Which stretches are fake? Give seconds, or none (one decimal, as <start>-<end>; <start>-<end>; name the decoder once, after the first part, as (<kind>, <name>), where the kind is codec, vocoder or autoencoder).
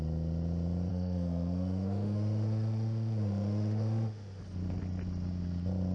0.9-4.4 (autoencoder, DAC-VAE)